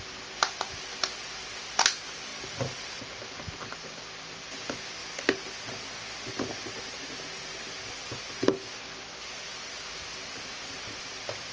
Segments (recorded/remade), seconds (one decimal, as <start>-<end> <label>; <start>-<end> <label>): 0.0-11.5 recorded